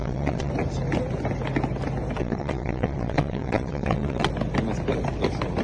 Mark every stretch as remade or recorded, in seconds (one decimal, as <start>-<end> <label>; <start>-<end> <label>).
0.0-0.5 remade; 0.5-2.2 recorded; 2.2-4.3 remade; 4.3-5.6 recorded